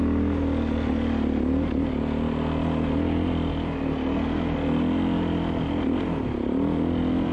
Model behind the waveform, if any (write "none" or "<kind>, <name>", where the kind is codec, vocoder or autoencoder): none